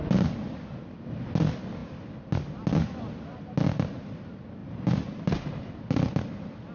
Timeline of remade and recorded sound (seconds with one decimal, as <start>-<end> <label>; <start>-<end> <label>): 0.0-4.6 recorded; 4.6-5.2 remade; 5.2-6.7 recorded